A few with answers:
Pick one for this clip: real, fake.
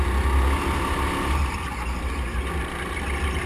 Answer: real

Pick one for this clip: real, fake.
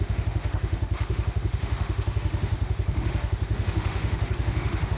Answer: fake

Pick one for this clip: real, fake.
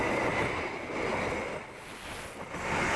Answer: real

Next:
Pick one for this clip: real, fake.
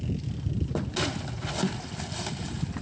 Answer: real